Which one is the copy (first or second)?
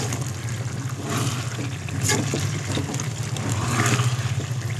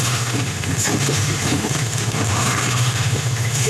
second